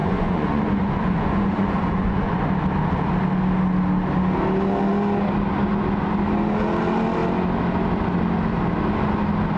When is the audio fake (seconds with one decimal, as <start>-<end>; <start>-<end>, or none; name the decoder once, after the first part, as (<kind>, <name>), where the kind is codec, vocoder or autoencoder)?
0.0-2.4 (vocoder, Vocos)